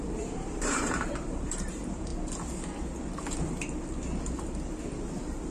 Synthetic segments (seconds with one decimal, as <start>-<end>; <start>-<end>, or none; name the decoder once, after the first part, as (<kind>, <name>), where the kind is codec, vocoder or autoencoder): 0.0-2.1 (vocoder, BigVGAN v2)